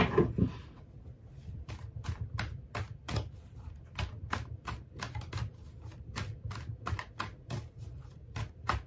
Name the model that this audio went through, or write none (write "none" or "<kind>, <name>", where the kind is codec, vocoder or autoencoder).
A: none